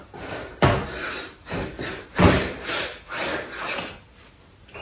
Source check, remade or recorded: recorded